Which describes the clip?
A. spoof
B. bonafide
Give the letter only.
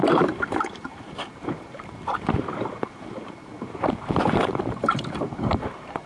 A